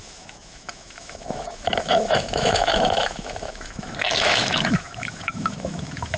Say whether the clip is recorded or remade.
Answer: remade